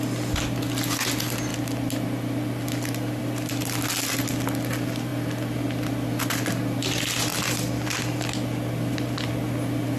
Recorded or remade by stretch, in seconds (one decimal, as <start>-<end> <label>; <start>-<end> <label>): 0.0-10.0 recorded